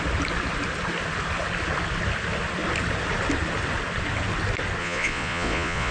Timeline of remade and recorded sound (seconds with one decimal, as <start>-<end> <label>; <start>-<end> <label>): 0.0-4.8 recorded; 4.8-5.9 remade